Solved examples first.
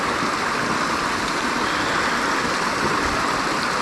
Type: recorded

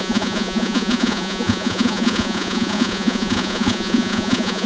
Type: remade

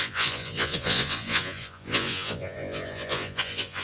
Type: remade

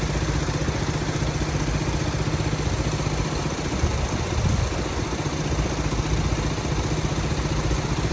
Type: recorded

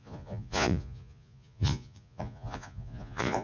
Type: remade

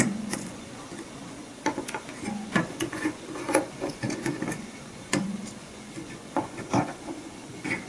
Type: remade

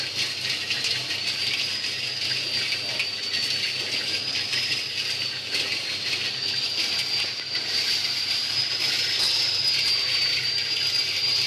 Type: recorded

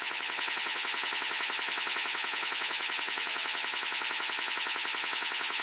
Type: remade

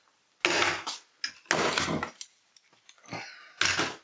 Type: recorded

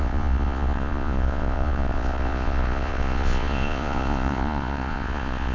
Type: remade